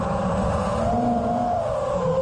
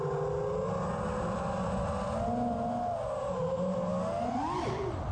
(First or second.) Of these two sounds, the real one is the second